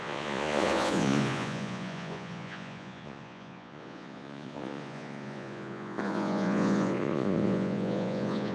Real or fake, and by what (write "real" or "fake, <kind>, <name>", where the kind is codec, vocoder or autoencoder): fake, vocoder, Vocos